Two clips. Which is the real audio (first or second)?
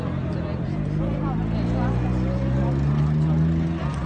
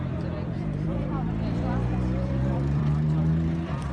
first